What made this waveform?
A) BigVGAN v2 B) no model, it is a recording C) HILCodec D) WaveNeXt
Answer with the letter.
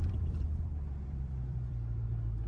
A